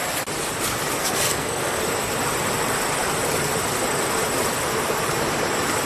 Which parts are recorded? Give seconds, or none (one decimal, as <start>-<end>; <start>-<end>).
0.0-1.0; 1.8-5.9